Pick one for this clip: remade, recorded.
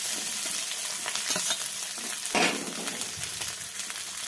recorded